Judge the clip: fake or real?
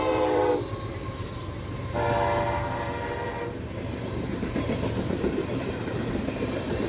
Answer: fake